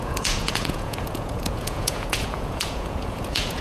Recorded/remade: remade